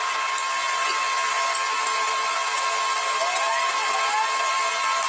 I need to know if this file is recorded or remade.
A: recorded